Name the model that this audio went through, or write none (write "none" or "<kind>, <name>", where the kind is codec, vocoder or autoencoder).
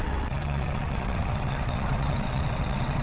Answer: vocoder, WaveNeXt